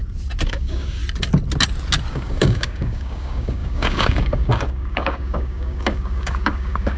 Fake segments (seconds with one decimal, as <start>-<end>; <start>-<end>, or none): 0.5-1.0; 2.1-7.0